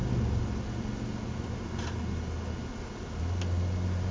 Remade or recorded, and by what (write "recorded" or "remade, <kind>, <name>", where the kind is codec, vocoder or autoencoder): recorded